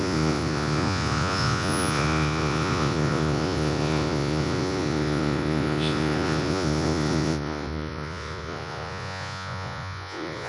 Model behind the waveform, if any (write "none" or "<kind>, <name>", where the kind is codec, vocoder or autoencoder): vocoder, Vocos